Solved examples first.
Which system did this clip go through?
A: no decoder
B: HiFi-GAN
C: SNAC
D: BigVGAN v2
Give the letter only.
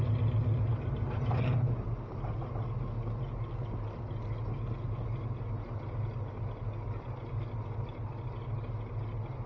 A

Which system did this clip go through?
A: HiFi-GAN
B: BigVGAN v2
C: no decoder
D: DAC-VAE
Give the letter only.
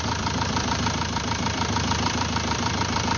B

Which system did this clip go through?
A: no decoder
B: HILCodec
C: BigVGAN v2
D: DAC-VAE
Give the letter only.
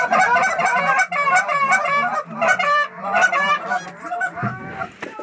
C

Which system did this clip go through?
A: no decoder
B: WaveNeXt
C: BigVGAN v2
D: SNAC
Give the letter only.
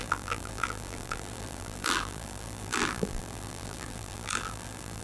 C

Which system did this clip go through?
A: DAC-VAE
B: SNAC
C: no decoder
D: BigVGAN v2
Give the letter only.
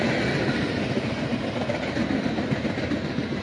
D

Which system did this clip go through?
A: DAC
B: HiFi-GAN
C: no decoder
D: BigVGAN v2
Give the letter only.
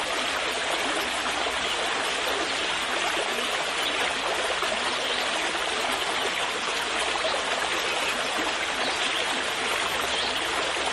C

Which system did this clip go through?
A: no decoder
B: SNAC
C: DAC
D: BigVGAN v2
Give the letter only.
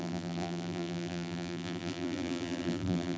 D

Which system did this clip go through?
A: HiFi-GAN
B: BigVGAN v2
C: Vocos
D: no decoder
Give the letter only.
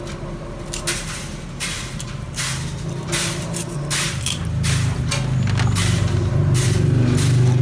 D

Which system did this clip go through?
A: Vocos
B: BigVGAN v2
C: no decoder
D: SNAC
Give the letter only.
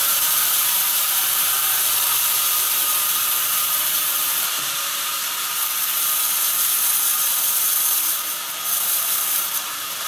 B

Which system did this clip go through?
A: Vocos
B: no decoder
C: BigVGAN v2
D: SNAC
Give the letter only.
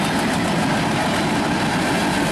B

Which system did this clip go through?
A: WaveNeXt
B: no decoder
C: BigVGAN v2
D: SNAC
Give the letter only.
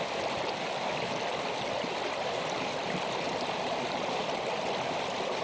B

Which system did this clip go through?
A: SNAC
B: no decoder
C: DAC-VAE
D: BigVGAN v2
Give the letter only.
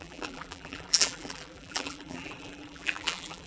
D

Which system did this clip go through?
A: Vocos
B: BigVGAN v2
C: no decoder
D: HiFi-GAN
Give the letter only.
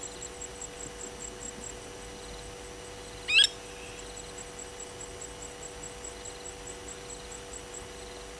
C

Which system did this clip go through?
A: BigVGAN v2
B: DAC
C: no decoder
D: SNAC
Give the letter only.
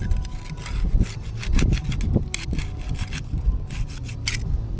C